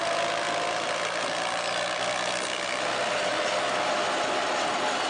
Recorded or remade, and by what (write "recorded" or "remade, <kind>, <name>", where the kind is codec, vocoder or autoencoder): recorded